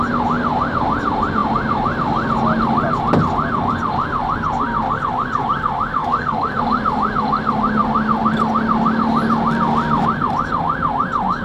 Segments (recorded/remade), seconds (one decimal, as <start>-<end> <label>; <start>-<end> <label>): 0.0-6.0 recorded; 6.0-6.6 remade; 6.6-11.4 recorded